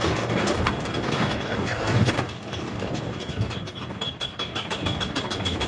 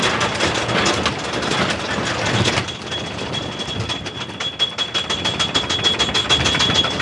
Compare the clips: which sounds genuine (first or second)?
second